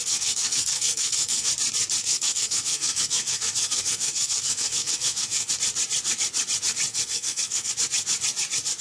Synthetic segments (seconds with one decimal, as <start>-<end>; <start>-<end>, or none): 0.0-1.5; 2.0-5.5; 6.9-7.7